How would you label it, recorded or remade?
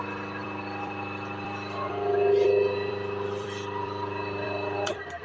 remade